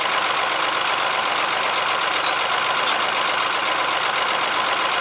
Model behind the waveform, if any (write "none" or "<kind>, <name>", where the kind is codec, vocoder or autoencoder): none